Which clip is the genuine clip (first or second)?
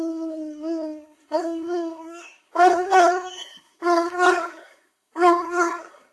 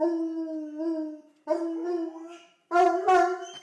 second